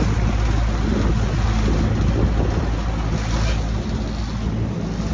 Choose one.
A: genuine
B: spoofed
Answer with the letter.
A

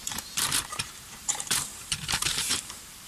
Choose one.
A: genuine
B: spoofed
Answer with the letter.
B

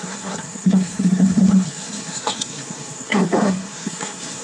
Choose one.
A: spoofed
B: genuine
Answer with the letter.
A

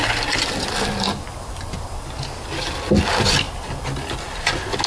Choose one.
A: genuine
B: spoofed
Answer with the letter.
A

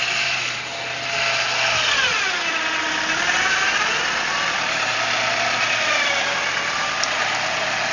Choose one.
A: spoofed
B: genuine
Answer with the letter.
B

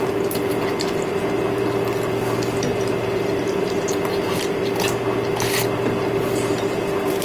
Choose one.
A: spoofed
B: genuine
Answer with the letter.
B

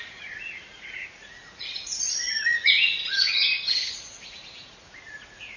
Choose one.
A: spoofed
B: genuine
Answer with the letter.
A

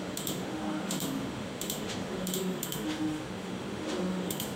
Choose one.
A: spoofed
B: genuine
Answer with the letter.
A